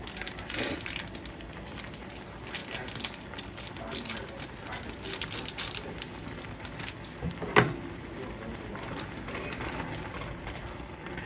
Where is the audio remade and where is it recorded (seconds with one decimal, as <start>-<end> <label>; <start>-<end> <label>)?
0.0-11.3 recorded

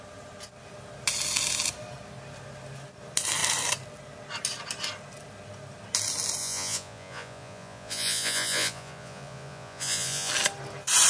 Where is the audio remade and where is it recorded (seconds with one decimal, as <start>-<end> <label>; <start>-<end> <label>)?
0.0-6.4 recorded; 6.4-10.3 remade; 10.3-11.1 recorded

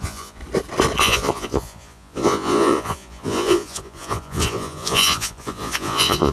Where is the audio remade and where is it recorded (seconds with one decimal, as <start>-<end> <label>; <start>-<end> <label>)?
0.0-0.4 remade; 0.4-1.0 recorded; 1.0-6.3 remade

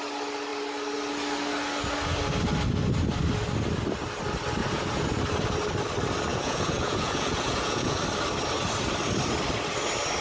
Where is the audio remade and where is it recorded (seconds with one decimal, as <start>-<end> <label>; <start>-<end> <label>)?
0.0-4.6 recorded; 4.6-5.2 remade; 5.2-6.3 recorded; 6.3-8.0 remade; 8.0-10.2 recorded

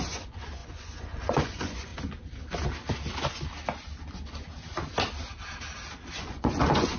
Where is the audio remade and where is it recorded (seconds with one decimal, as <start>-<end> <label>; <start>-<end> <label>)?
0.0-1.9 remade; 1.9-6.1 recorded; 6.1-7.0 remade